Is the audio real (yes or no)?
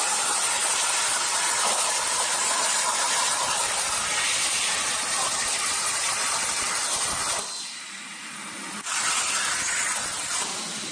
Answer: yes